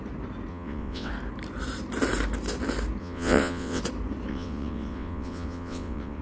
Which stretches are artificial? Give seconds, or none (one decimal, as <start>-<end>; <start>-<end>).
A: 0.5-1.1; 3.0-3.8; 4.3-6.2